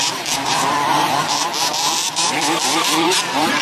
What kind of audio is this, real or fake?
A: fake